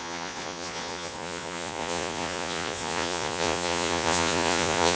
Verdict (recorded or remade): remade